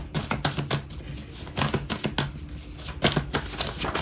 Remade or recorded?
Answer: recorded